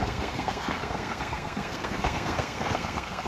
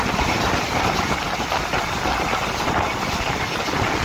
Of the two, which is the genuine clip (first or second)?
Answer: second